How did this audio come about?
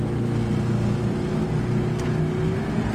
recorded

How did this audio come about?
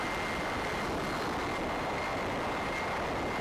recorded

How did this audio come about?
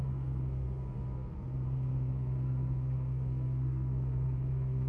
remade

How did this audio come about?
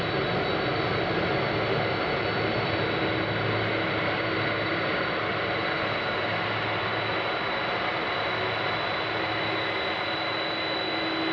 recorded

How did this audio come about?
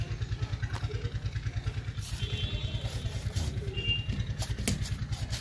recorded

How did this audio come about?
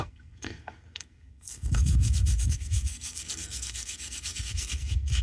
remade